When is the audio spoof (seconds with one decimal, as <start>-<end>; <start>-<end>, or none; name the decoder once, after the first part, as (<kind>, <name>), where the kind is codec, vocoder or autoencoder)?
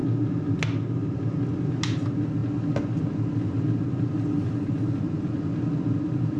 none